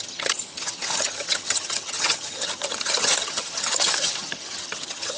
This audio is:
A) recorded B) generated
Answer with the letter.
B